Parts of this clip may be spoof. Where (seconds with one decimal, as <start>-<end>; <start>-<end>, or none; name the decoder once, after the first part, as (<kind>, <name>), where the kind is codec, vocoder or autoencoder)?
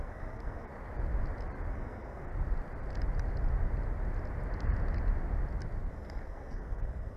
0.0-0.7 (codec, SNAC); 1.7-2.3; 5.9-7.2